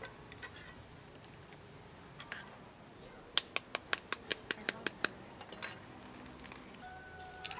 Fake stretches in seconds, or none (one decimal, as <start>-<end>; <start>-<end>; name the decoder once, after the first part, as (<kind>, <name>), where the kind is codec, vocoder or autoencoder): 0.8-2.9 (vocoder, BigVGAN v2); 4.3-5.3